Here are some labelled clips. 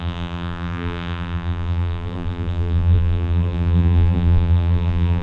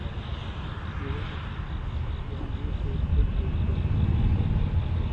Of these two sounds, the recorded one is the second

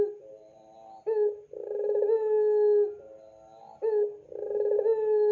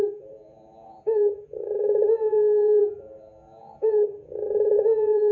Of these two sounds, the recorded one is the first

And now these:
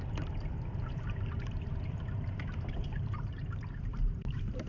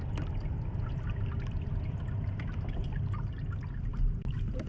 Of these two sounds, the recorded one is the second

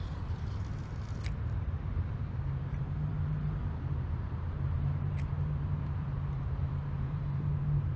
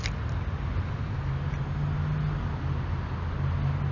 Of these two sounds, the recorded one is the second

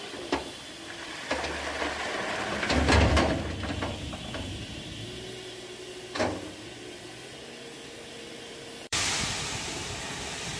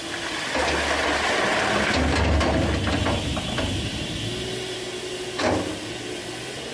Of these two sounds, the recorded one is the second